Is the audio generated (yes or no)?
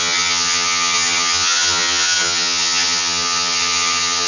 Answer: yes